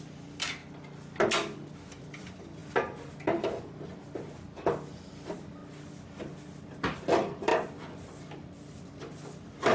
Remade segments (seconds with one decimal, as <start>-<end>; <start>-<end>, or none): 0.0-0.6; 1.7-2.6; 5.1-5.6; 6.7-9.7